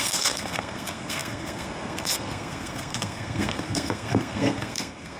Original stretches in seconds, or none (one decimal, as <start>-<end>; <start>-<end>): none